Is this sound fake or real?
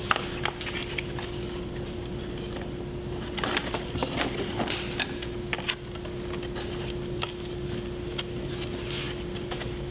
real